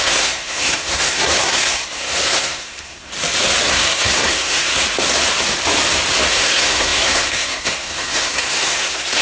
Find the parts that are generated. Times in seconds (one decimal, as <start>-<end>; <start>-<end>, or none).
0.0-3.1; 3.7-4.7; 6.3-9.2